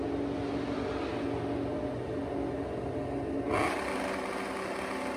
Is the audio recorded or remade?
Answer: recorded